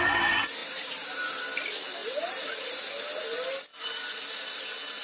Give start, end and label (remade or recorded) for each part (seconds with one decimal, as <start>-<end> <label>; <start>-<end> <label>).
0.0-0.6 recorded; 0.6-1.4 remade; 1.4-2.0 recorded; 2.0-2.8 remade; 2.8-5.0 recorded